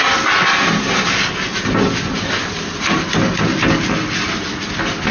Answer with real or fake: real